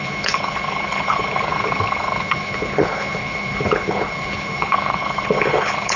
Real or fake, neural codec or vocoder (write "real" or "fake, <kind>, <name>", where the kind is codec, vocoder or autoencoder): fake, codec, HILCodec